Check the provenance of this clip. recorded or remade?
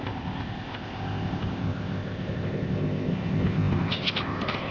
remade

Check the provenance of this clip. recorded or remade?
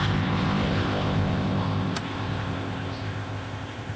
remade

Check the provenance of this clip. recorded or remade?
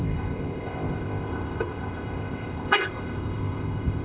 remade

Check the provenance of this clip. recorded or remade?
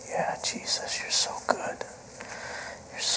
recorded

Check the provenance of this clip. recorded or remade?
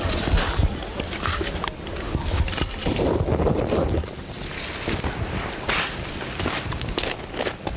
recorded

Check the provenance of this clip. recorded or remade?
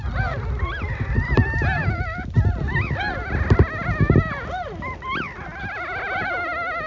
recorded